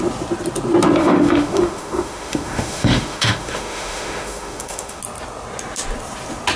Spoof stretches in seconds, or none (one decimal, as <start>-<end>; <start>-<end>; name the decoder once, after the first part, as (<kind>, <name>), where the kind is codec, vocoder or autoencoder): 1.0-5.0 (autoencoder, DAC-VAE)